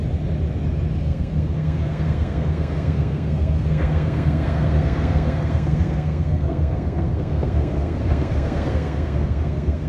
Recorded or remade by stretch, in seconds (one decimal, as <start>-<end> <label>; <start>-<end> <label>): 0.0-1.0 recorded; 1.0-9.9 remade